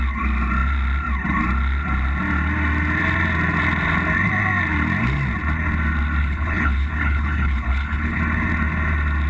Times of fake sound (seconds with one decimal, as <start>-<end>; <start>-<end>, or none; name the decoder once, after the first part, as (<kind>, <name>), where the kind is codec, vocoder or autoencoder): 6.2-8.2 (codec, HILCodec)